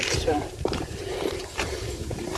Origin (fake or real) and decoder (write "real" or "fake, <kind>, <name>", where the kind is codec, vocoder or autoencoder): fake, vocoder, BigVGAN v2